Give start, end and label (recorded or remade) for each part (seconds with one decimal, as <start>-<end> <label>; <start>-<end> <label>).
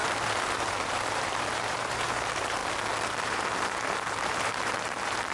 0.0-2.6 remade; 2.6-3.2 recorded; 3.2-5.3 remade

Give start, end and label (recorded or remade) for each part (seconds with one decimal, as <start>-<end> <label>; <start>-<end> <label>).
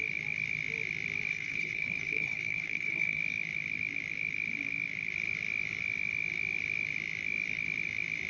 0.0-1.3 recorded; 1.3-3.2 remade; 3.2-8.3 recorded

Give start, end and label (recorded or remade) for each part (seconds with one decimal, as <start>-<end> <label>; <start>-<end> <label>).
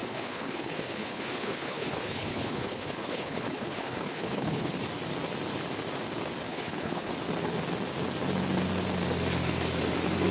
0.0-4.7 remade; 4.7-6.5 recorded; 6.5-7.1 remade; 7.1-10.3 recorded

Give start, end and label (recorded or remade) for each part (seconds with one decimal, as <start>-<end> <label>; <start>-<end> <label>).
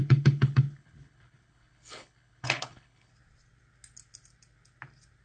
0.0-3.1 remade; 3.1-5.2 recorded